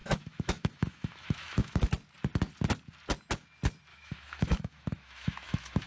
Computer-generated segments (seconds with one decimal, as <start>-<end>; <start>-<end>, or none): 0.0-1.9; 3.9-5.9